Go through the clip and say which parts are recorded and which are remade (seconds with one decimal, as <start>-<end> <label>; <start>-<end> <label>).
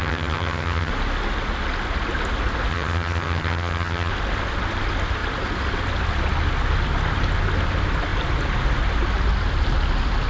0.0-0.9 remade; 0.9-2.7 recorded; 2.7-4.1 remade; 4.1-10.3 recorded